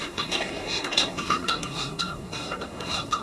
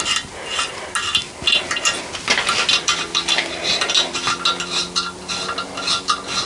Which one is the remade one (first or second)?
first